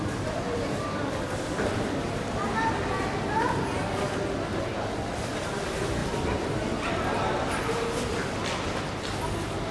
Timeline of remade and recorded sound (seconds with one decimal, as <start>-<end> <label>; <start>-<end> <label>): 0.0-9.7 recorded